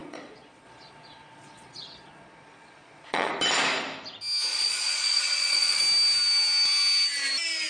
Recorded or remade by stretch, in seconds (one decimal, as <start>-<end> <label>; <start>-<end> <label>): 0.0-3.3 remade; 3.3-4.5 recorded; 4.5-5.8 remade; 5.8-7.7 recorded